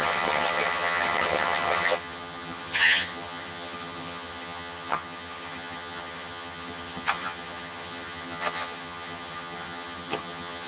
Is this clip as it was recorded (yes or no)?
no